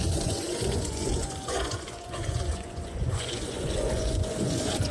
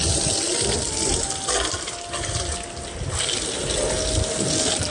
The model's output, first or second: first